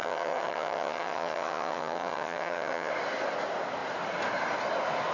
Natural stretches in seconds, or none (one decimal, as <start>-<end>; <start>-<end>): 2.9-5.1